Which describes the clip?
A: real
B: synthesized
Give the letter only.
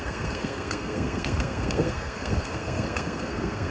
B